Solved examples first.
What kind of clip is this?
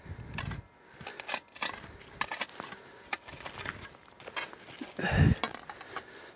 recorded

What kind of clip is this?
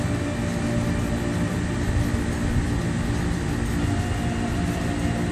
recorded